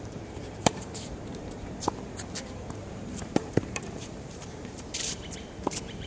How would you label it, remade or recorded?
remade